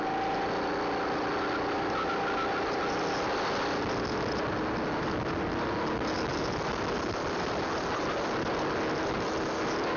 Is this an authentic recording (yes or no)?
yes